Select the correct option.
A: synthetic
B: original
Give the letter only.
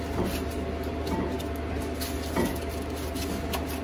B